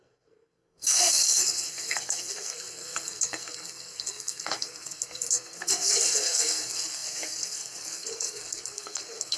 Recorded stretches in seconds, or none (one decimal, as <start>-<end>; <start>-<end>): none